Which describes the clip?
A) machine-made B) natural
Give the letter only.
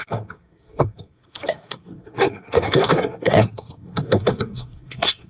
A